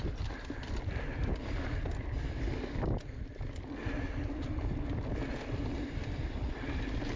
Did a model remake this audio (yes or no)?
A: no